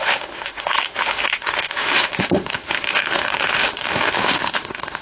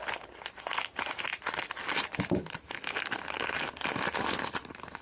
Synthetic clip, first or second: first